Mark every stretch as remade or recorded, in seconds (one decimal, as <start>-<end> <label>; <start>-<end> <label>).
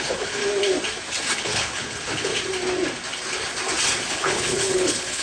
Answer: 0.0-0.4 remade; 0.4-1.4 recorded; 1.4-2.3 remade; 2.3-4.1 recorded; 4.1-5.2 remade